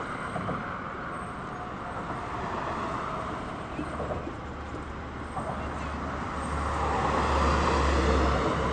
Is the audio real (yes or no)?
yes